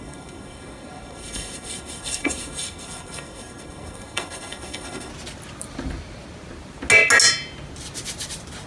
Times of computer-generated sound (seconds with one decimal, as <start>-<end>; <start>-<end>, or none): 0.0-5.1